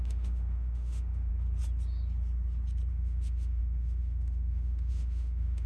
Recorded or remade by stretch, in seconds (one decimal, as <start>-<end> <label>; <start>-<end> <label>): 0.0-1.3 remade; 1.3-2.9 recorded; 2.9-5.7 remade